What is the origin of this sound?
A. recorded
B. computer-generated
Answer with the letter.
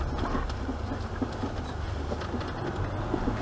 A